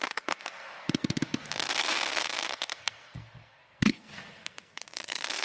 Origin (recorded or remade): remade